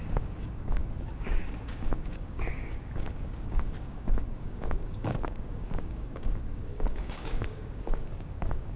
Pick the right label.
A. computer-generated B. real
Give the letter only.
A